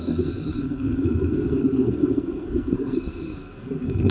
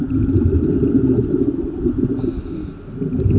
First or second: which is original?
second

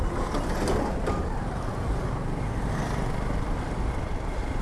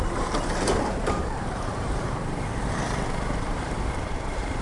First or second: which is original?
first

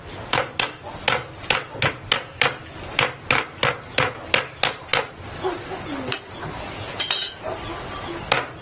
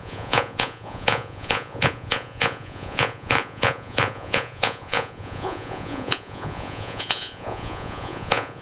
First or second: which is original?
first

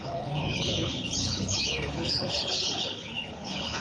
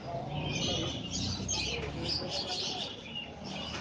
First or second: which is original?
second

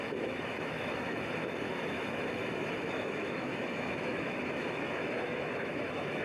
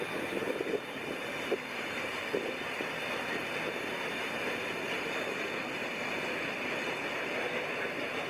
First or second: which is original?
second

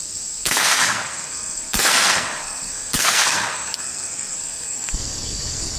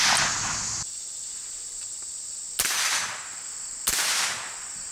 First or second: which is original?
second